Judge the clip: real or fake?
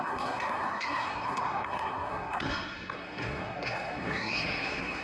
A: fake